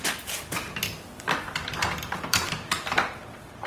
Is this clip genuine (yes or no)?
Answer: no